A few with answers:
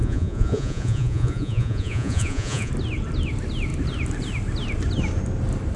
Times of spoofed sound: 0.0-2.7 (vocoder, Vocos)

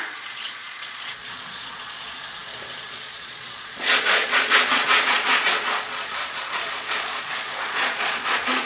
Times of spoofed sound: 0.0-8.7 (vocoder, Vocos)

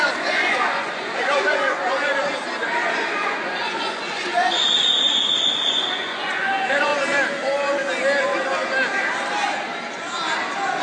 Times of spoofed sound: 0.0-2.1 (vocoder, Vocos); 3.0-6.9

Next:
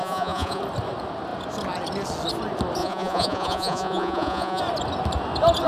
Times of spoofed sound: 0.0-0.6 (vocoder, Vocos); 2.8-4.6